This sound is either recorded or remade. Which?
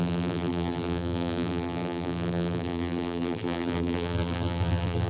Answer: remade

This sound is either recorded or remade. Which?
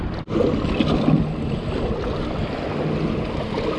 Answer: recorded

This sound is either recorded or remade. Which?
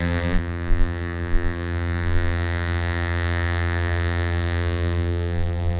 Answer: remade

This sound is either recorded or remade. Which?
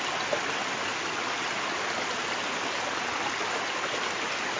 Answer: recorded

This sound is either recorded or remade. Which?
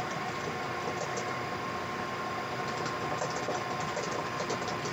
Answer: recorded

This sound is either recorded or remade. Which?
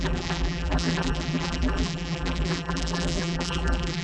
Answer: remade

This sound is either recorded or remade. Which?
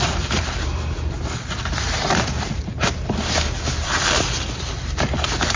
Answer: remade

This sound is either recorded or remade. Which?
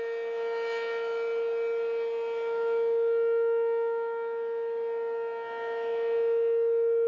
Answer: recorded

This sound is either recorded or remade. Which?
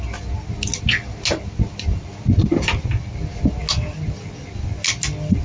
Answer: recorded